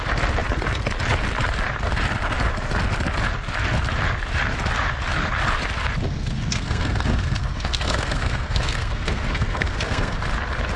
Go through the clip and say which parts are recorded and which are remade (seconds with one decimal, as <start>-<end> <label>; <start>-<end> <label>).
0.0-6.1 recorded; 6.1-10.2 remade; 10.2-10.8 recorded